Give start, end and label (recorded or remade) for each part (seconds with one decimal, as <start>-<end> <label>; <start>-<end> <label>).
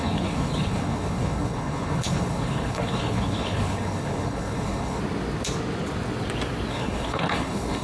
0.0-5.0 remade; 5.0-6.7 recorded; 6.7-7.8 remade